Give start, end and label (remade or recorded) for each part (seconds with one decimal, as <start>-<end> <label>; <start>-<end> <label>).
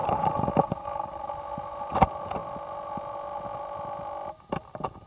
0.0-5.1 recorded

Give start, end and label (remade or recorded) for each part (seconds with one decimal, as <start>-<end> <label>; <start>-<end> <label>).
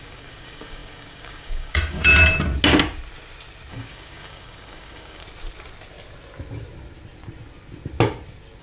0.0-2.1 remade; 2.1-3.7 recorded; 3.7-5.2 remade; 5.2-8.6 recorded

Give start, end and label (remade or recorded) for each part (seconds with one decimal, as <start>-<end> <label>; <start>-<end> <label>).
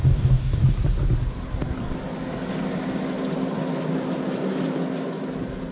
0.0-0.6 remade; 0.6-5.7 recorded